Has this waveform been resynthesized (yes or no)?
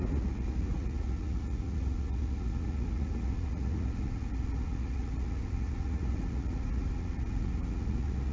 yes